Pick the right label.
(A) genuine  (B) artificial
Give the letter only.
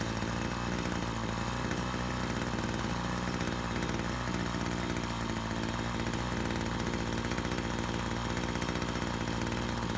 A